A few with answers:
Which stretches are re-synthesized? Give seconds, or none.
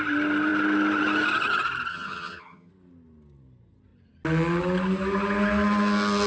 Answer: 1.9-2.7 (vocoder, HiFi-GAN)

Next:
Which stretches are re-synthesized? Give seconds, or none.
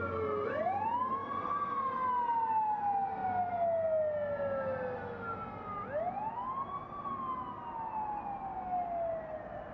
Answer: none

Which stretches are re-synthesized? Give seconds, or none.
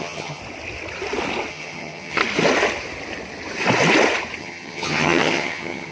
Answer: 0.0-0.4 (vocoder, HiFi-GAN); 1.5-2.2; 4.4-5.9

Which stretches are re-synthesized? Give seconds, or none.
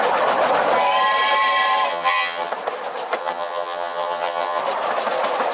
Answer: 1.9-2.5 (vocoder, HiFi-GAN); 3.2-4.6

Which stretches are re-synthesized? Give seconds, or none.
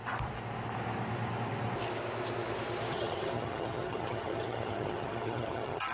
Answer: 2.9-5.9 (vocoder, HiFi-GAN)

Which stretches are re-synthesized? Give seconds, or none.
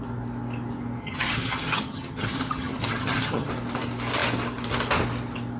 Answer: 1.0-3.5 (vocoder, HiFi-GAN)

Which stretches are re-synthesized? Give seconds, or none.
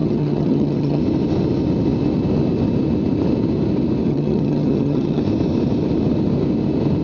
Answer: 0.0-1.0 (vocoder, HiFi-GAN); 4.1-5.2